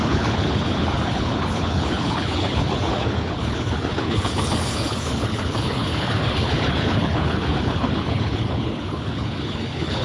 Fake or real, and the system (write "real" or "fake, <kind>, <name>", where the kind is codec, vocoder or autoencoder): fake, codec, HILCodec